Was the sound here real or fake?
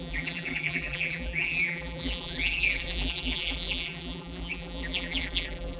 fake